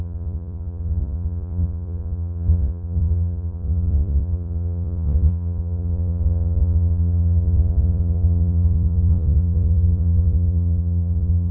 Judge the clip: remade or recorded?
remade